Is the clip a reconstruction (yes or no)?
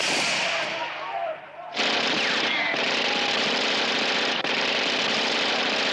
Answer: yes